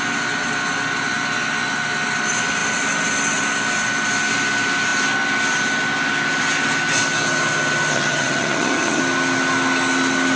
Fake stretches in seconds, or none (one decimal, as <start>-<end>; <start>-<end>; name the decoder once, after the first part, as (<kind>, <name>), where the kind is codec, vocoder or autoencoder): 7.9-9.0 (vocoder, HiFi-GAN)